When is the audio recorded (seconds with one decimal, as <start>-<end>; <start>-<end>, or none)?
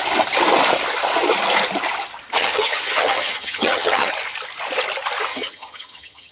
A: 0.0-2.4; 4.1-5.3